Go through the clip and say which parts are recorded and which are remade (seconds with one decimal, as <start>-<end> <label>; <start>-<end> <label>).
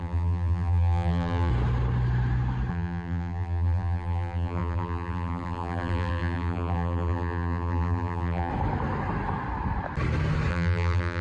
0.0-1.5 remade; 1.5-2.7 recorded; 2.7-8.5 remade; 8.5-10.5 recorded; 10.5-11.2 remade